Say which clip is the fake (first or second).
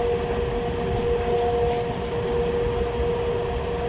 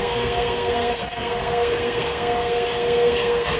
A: second